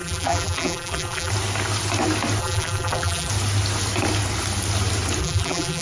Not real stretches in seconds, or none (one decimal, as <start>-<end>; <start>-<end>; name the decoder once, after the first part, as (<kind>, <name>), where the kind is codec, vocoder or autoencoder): 0.0-1.3 (vocoder, BigVGAN v2); 2.4-3.3; 5.2-5.8